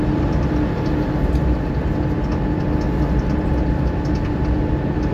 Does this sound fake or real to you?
real